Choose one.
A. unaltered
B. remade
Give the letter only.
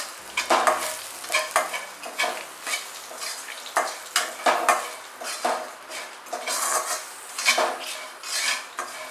A